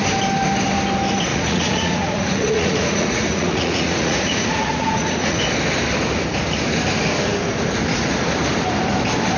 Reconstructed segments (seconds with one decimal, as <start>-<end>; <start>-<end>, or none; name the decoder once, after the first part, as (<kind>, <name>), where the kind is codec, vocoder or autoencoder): 1.3-5.4 (vocoder, Vocos)